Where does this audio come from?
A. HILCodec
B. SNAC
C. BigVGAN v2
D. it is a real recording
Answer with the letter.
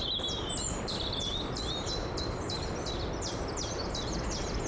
C